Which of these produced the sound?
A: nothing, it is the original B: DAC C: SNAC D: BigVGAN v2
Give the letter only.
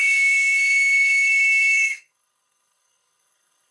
C